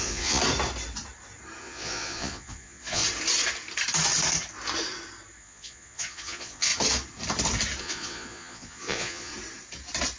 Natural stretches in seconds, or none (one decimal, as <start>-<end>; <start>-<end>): 0.4-1.6; 3.0-5.4; 6.7-7.8; 9.3-10.2